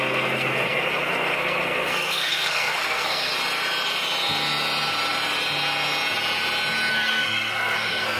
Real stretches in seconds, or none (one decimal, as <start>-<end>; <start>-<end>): 3.3-6.9